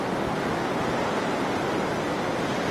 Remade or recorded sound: recorded